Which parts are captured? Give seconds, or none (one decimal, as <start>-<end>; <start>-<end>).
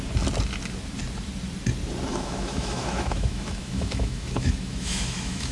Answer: 0.0-2.1